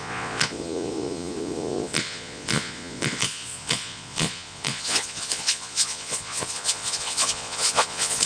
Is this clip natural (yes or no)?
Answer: no